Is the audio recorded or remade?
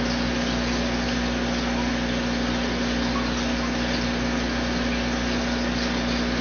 recorded